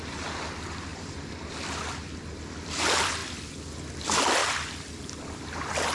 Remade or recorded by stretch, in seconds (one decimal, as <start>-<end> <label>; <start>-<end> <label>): 0.0-0.9 recorded; 0.9-1.4 remade; 1.4-3.2 recorded; 3.2-3.7 remade; 3.7-4.4 recorded; 4.4-5.0 remade; 5.0-5.9 recorded